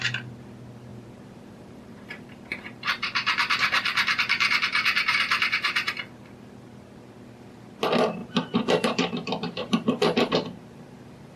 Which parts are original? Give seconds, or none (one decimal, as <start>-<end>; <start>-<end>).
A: 0.0-0.9; 6.1-8.2